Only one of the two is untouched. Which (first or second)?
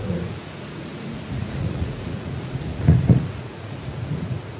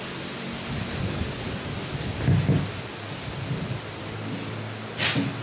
second